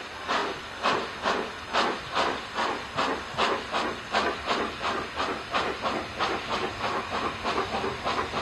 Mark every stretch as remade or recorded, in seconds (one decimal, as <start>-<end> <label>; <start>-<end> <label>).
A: 0.0-8.4 recorded